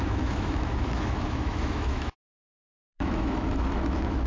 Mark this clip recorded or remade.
remade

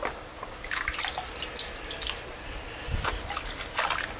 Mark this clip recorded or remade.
recorded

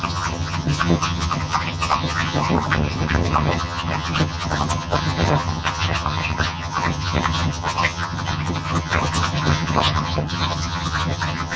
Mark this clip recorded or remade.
remade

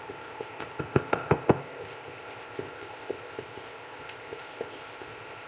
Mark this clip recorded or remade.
remade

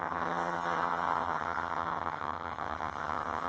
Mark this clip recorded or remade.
remade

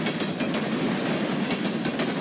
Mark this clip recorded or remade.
recorded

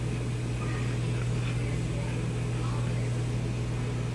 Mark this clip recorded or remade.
recorded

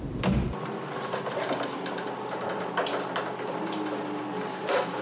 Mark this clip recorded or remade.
recorded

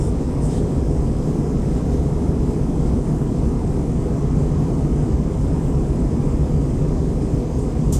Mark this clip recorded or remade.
remade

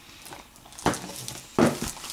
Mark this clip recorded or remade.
recorded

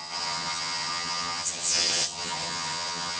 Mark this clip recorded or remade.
remade